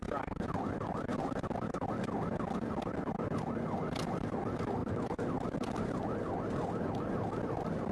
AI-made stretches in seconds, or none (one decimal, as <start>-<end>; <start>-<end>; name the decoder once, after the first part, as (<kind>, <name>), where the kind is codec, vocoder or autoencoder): none